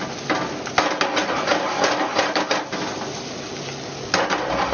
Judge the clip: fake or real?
real